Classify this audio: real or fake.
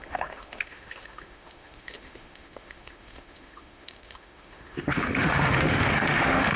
fake